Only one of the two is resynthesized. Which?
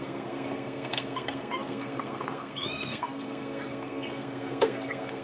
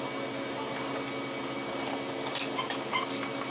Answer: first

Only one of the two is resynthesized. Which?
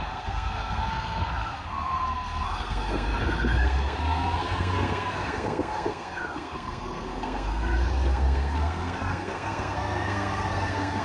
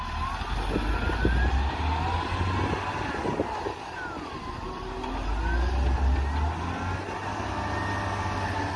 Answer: first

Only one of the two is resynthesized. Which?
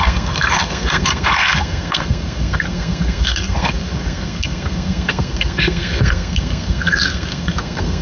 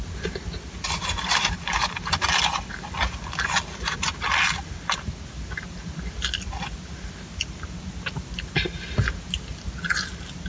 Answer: first